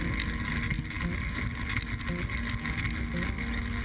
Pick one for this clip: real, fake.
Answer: real